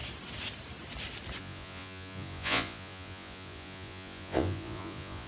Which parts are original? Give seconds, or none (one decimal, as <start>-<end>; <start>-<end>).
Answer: 0.0-1.4